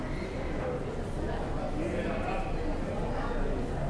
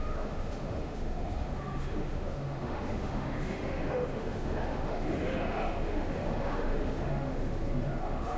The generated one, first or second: second